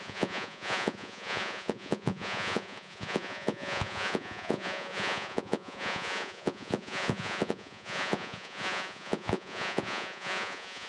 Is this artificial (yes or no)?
yes